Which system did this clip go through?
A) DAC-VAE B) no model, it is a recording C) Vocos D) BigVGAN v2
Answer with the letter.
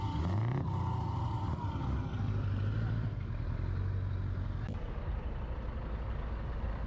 B